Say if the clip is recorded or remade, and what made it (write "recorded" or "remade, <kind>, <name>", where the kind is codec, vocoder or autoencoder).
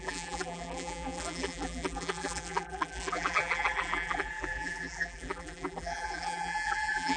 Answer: remade, vocoder, BigVGAN v2